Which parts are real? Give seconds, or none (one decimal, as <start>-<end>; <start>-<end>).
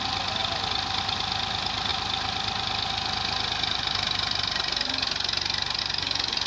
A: 0.0-6.5